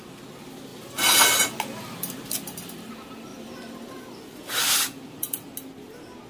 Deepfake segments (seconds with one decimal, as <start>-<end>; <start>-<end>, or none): 0.7-2.9; 3.3-4.0; 4.4-5.5